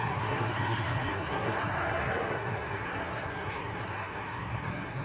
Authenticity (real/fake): fake